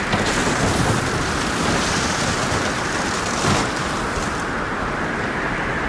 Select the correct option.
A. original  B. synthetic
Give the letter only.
A